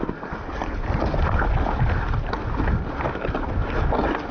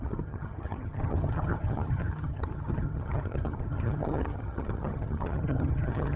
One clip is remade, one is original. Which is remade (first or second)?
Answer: second